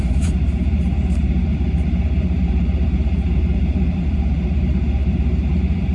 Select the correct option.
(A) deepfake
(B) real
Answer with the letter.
A